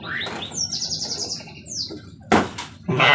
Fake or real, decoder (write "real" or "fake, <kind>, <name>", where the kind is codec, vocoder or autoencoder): real